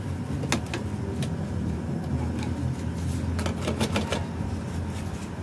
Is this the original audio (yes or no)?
yes